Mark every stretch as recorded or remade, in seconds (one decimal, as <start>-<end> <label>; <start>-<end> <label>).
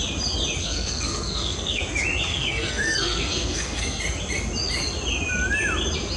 0.0-0.6 recorded; 0.6-1.8 remade; 1.8-2.3 recorded; 2.3-4.0 remade; 4.0-6.2 recorded